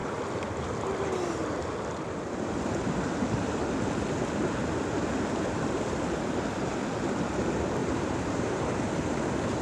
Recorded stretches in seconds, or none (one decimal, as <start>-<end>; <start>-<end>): 0.6-7.8; 8.8-9.6